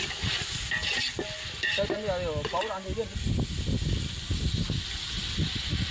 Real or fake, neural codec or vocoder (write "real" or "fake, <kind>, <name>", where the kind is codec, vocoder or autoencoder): real